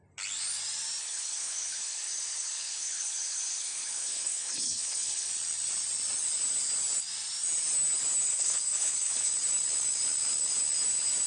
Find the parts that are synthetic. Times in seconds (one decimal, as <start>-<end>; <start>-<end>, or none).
1.0-5.3; 8.3-9.3